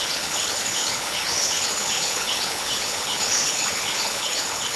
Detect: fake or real fake